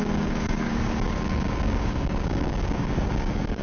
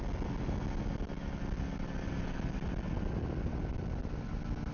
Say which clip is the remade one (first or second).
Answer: first